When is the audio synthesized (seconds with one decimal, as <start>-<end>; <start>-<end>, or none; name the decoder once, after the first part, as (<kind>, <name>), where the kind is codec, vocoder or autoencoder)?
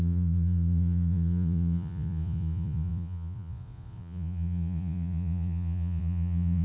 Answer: 0.0-6.6 (vocoder, Vocos)